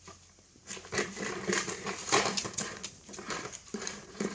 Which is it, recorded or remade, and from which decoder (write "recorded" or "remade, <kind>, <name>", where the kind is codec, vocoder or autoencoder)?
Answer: remade, vocoder, BigVGAN v2